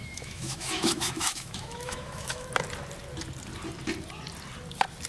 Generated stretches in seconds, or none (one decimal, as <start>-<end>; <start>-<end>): 0.0-2.5